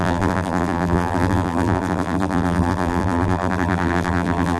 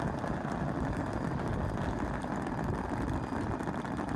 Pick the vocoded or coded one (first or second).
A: first